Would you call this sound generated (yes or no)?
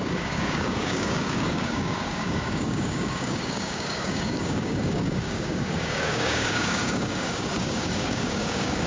yes